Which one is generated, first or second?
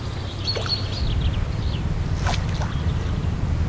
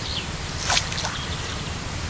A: second